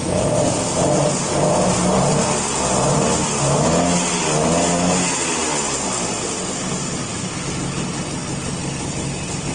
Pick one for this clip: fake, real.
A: real